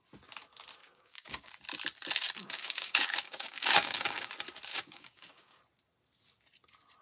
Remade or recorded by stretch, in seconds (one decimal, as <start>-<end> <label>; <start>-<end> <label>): 0.0-0.8 recorded; 0.8-1.5 remade; 1.5-2.4 recorded; 2.4-4.3 remade; 4.3-4.7 recorded; 4.7-5.6 remade; 5.6-7.0 recorded